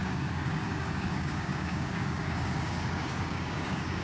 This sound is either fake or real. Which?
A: fake